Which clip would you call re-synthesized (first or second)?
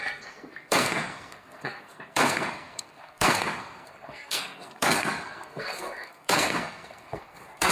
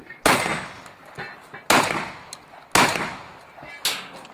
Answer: first